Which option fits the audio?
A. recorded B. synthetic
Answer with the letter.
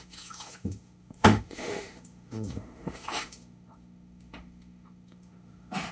B